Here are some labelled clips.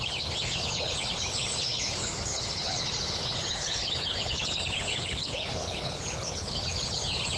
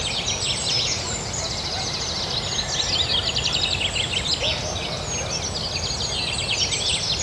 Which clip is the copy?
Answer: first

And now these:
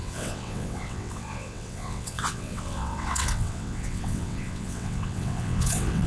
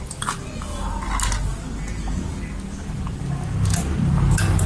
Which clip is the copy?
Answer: first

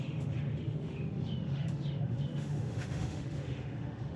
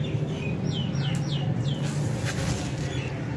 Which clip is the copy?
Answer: first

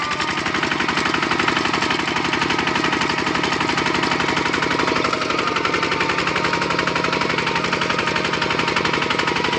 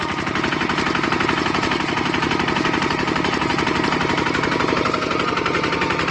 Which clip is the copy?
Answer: second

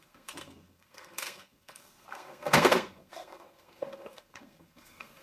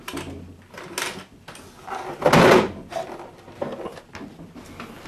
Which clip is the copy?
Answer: first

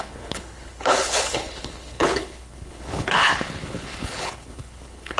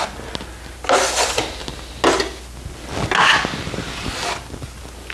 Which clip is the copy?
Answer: first